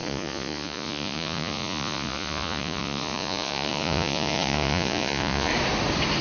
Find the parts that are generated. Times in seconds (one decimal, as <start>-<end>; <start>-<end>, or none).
0.0-5.5